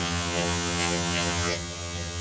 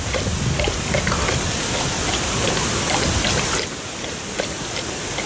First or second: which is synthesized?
first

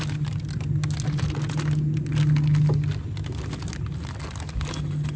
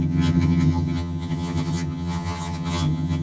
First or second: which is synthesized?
second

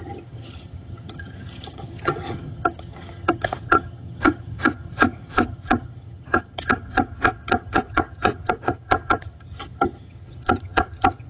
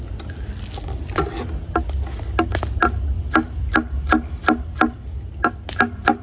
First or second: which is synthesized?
first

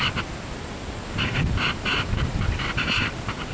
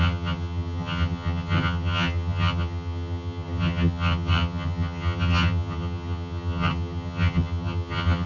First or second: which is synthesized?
second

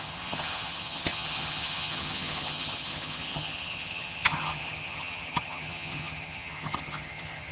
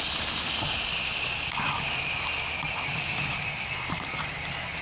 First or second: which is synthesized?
first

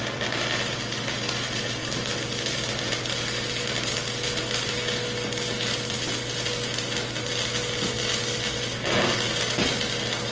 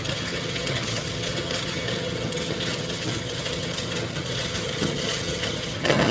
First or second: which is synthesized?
second